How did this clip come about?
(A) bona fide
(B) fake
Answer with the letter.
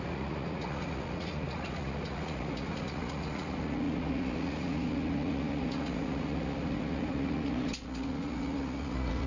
B